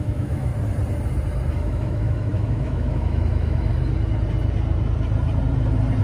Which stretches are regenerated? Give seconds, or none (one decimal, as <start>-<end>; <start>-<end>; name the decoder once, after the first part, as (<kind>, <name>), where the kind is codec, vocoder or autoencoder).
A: 0.0-0.5 (autoencoder, DAC-VAE); 1.5-3.7